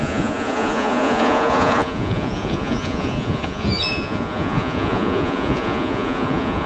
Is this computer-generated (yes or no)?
yes